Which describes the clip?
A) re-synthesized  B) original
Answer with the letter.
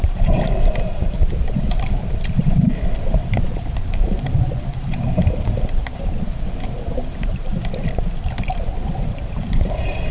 A